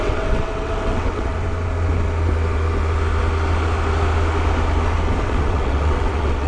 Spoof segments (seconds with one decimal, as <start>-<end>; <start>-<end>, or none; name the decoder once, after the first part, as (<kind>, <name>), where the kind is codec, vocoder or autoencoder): 0.0-1.3 (vocoder, WaveNeXt); 5.2-6.5